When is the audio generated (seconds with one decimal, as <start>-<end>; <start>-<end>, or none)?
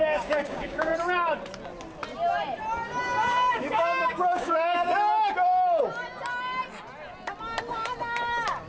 0.0-0.9; 3.0-4.9